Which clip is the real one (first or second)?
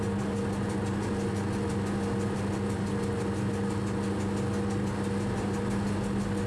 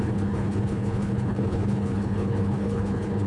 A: first